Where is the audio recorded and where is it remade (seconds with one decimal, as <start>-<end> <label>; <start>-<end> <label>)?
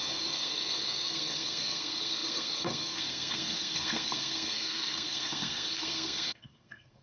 0.0-7.0 remade